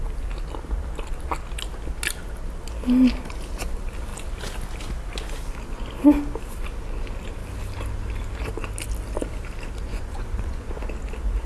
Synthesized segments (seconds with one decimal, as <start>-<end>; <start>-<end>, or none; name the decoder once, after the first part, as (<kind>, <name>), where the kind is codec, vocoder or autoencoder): 9.9-10.9 (vocoder, Vocos)